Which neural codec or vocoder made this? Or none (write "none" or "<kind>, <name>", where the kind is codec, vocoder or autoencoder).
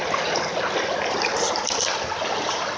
none